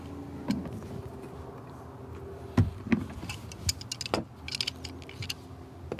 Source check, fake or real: real